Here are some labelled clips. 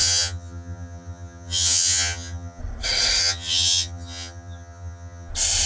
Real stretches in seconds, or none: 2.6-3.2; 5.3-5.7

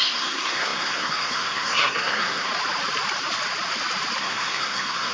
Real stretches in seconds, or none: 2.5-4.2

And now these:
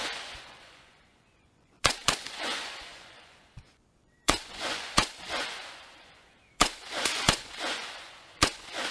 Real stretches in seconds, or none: none

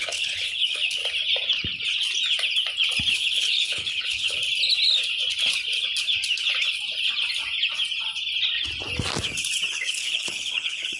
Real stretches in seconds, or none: 1.0-3.1; 4.4-9.7

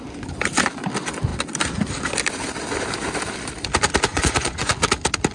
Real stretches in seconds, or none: 0.0-4.1; 4.7-5.3

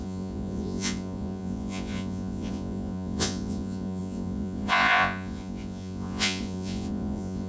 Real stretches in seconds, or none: none

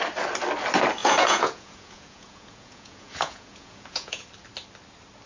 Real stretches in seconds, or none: 0.0-1.0; 4.2-5.3